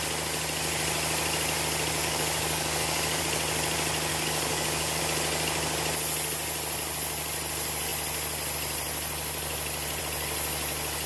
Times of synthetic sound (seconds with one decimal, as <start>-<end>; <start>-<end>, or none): 2.0-3.2; 4.1-5.0